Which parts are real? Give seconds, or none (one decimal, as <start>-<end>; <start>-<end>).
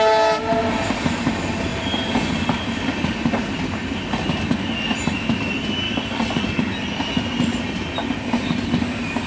0.0-1.7; 2.3-9.3